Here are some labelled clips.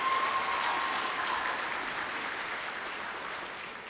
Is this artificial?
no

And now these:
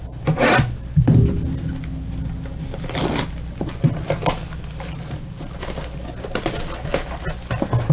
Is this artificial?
no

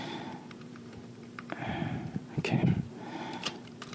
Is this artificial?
yes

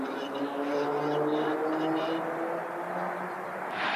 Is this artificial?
no